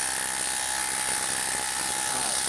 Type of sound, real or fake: real